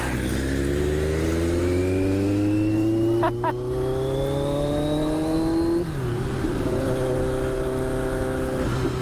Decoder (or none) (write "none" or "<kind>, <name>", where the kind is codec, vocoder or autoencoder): none